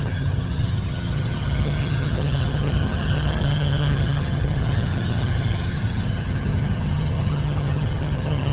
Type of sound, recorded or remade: remade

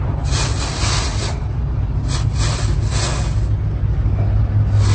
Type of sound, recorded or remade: recorded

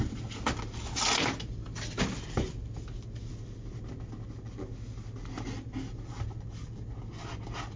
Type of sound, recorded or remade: recorded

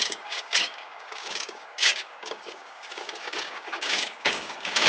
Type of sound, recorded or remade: remade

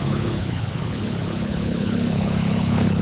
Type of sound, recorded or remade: remade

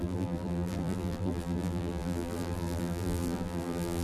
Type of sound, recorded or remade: remade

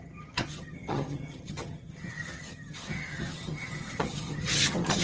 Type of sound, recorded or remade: remade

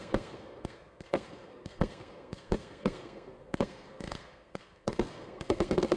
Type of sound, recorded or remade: remade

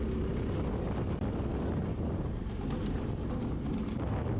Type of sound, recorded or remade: recorded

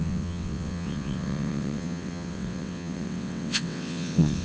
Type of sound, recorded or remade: remade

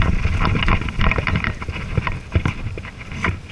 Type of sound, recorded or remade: recorded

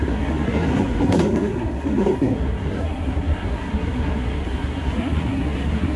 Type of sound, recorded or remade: remade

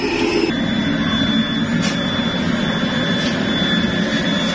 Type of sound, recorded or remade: recorded